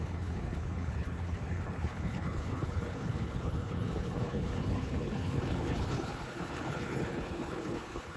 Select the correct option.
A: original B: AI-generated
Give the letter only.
B